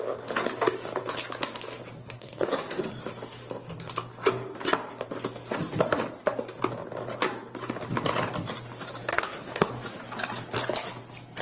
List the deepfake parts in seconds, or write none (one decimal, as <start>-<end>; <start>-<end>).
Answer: 2.0-2.8; 9.1-9.7